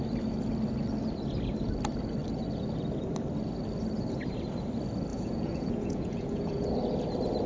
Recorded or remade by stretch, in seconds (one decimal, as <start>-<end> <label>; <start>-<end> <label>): 0.0-5.1 recorded; 5.1-6.8 remade; 6.8-7.5 recorded